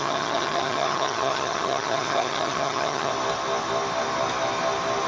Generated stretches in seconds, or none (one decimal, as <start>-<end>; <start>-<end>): 0.0-3.1